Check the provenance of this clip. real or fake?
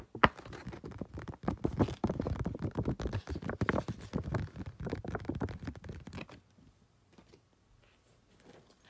real